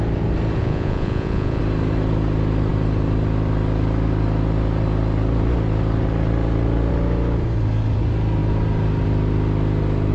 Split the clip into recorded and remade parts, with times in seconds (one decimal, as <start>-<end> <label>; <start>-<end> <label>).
0.0-0.6 recorded; 0.6-1.6 remade; 1.6-10.1 recorded